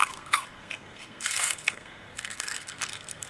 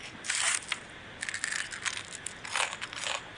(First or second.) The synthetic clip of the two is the first